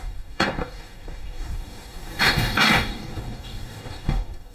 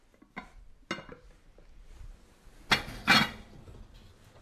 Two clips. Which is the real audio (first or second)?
second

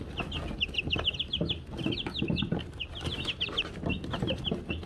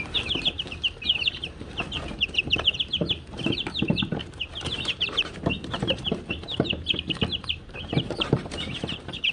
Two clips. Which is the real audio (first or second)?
first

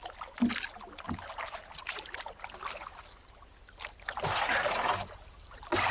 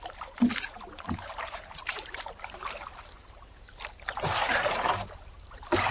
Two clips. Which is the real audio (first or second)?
first